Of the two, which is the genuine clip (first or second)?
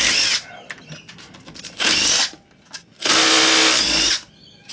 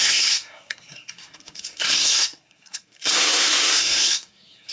first